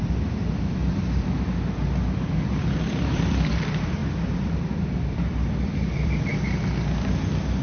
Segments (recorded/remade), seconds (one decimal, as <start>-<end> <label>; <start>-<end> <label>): 0.0-0.8 remade; 0.8-2.8 recorded; 2.8-6.3 remade; 6.3-7.6 recorded